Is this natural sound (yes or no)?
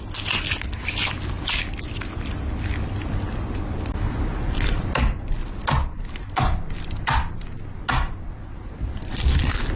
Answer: yes